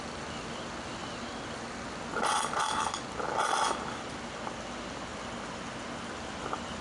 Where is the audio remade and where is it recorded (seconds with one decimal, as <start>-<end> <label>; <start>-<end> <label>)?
0.0-6.8 recorded